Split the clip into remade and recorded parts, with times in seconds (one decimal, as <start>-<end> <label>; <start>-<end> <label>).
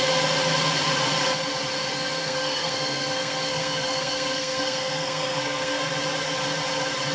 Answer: 0.0-1.9 recorded; 1.9-5.9 remade; 5.9-7.1 recorded